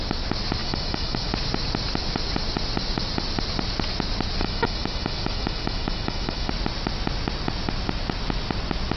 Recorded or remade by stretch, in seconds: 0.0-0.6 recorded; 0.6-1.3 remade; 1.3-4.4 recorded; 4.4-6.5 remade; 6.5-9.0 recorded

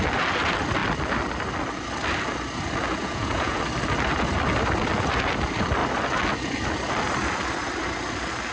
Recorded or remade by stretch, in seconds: 0.0-3.0 recorded; 3.0-3.6 remade; 3.6-8.5 recorded

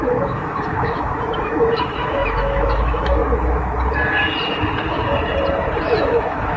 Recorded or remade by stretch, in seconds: 0.0-3.2 remade; 3.2-5.8 recorded; 5.8-6.6 remade

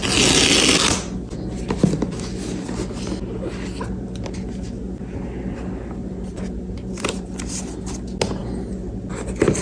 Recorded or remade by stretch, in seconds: 0.0-9.6 recorded

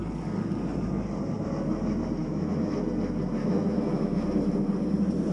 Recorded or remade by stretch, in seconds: 0.0-2.2 recorded; 2.2-2.7 remade; 2.7-3.4 recorded; 3.4-4.3 remade; 4.3-5.3 recorded

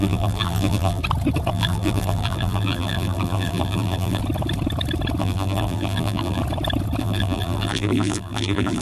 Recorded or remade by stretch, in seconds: 0.0-1.0 remade; 1.0-1.5 recorded; 1.5-4.2 remade; 4.2-5.2 recorded; 5.2-6.4 remade; 6.4-7.0 recorded; 7.0-8.8 remade

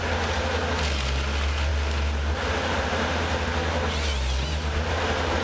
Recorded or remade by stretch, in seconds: 0.0-5.4 recorded